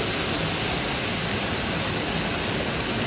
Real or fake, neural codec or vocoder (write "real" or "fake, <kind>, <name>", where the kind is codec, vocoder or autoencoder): real